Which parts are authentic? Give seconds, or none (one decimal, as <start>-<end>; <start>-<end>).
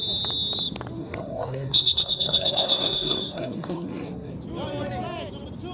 0.0-1.0; 4.3-5.7